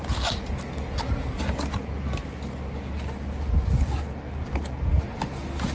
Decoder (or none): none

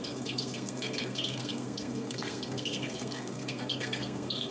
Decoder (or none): codec, SNAC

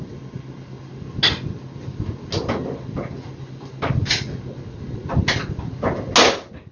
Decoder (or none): none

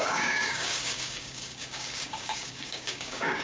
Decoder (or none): codec, DAC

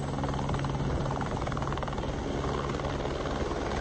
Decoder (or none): none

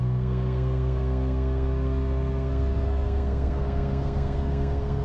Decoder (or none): codec, SNAC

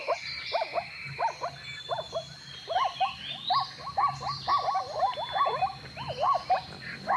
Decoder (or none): none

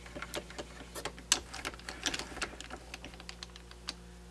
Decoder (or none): none